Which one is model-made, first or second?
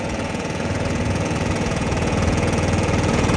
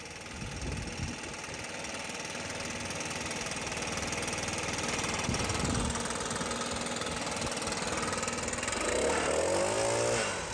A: first